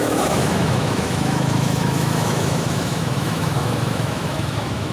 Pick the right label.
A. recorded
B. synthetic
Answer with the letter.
B